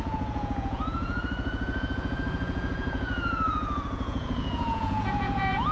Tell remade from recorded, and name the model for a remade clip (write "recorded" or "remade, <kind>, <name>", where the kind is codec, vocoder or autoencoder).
remade, vocoder, Vocos